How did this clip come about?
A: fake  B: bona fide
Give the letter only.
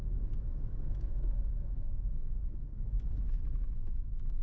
A